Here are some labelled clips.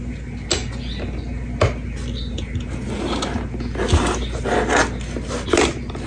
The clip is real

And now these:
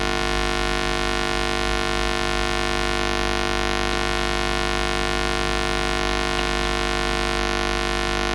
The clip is real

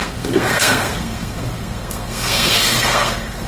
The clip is fake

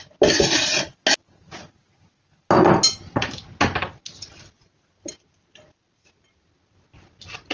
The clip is real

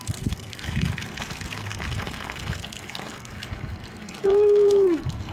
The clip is fake